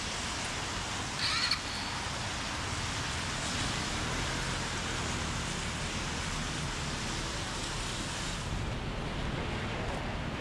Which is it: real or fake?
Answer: real